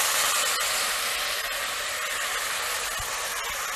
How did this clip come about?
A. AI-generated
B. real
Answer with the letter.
B